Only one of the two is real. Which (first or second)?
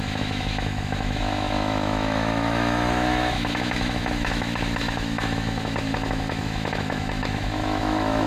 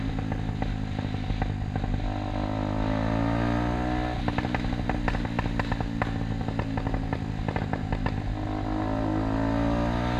second